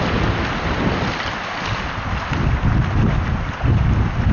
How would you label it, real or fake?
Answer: real